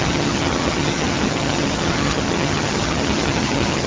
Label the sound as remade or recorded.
remade